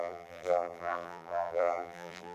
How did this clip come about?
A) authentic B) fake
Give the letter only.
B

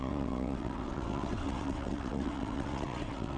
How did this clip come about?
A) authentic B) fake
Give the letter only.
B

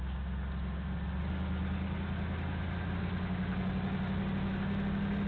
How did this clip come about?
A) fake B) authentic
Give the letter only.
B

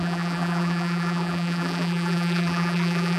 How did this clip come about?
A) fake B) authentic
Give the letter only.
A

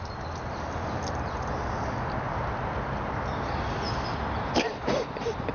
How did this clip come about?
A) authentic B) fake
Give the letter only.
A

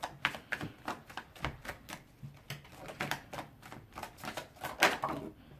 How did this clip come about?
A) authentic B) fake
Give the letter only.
A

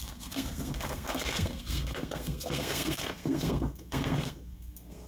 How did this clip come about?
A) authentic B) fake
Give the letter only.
B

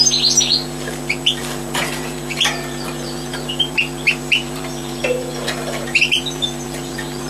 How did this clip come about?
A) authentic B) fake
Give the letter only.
B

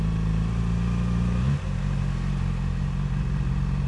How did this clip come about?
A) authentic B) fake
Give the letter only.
A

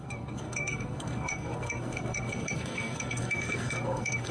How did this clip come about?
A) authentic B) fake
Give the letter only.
B